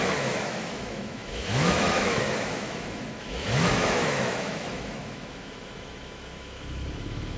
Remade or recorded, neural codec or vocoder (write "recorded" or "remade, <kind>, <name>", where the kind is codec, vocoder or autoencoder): remade, autoencoder, DAC-VAE